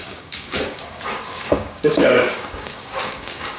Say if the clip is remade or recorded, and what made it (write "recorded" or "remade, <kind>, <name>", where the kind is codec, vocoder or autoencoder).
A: remade, codec, DAC